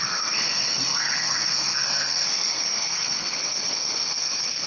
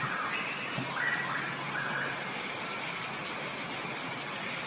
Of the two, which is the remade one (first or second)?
first